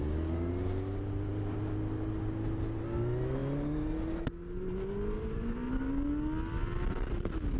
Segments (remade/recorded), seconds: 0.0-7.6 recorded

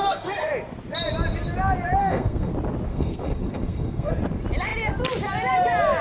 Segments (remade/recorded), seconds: 0.0-0.5 remade; 0.5-2.0 recorded; 2.0-2.5 remade; 2.5-2.9 recorded; 2.9-4.1 remade; 4.1-6.0 recorded

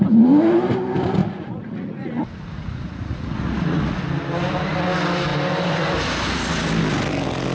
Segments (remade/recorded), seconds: 0.0-1.2 recorded; 1.2-4.0 remade; 4.0-7.5 recorded